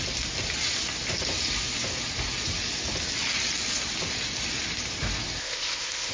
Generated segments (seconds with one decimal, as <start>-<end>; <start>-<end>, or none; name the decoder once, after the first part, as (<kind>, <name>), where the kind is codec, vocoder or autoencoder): 5.4-6.1 (codec, ZipCodec)